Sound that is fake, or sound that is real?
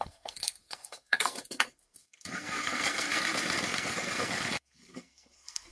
fake